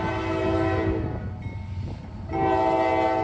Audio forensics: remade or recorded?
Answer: recorded